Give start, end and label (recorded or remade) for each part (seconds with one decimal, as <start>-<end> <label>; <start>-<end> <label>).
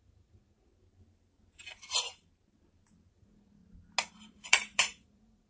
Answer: 0.0-0.7 remade; 0.7-3.1 recorded; 3.1-3.6 remade; 3.6-4.3 recorded; 4.3-5.5 remade